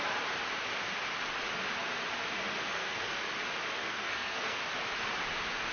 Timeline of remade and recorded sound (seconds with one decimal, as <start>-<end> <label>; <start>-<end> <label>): 0.0-2.5 recorded; 2.5-3.3 remade; 3.3-3.8 recorded; 3.8-4.6 remade; 4.6-5.7 recorded